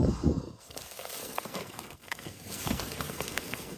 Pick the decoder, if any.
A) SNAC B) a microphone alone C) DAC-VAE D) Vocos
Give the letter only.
A